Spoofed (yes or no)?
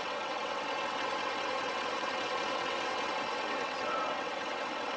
yes